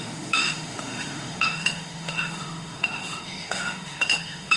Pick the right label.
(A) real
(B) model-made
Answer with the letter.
B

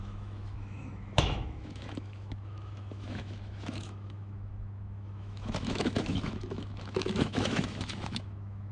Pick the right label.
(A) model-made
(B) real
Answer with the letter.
A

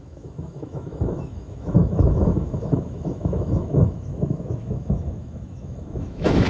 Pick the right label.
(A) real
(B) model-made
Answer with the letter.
B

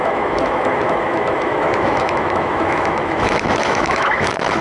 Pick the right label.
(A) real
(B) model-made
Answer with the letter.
B